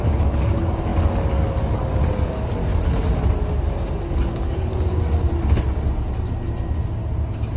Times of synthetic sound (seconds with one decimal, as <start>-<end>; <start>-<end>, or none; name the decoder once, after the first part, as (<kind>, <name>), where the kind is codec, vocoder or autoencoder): 0.0-2.6 (codec, DAC); 3.9-4.9